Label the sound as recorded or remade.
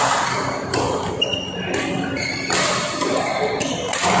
recorded